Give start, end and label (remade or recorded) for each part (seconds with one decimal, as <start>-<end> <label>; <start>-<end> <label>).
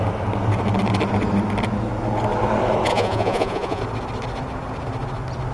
0.0-2.9 recorded; 2.9-3.8 remade; 3.8-5.5 recorded